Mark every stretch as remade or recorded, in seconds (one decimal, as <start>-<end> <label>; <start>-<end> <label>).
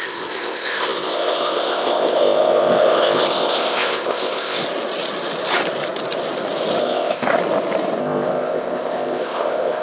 0.0-4.6 remade; 4.6-6.8 recorded; 6.8-7.3 remade; 7.3-8.0 recorded; 8.0-9.8 remade